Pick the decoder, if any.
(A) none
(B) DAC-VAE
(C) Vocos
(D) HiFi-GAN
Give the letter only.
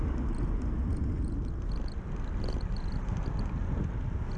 A